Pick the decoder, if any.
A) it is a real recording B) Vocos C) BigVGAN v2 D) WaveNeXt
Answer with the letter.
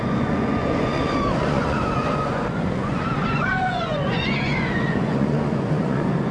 B